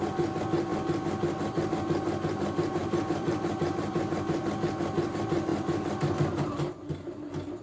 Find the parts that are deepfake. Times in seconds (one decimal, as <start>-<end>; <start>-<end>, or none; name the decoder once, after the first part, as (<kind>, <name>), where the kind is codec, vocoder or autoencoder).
2.8-4.1 (vocoder, BigVGAN v2)